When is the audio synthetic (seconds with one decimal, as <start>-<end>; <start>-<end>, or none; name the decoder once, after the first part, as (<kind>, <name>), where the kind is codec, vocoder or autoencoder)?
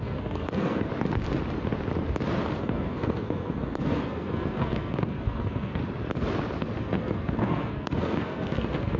0.0-0.9 (codec, SNAC); 2.6-5.8; 6.8-9.0